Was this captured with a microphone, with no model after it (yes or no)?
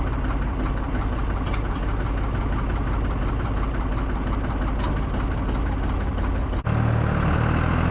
yes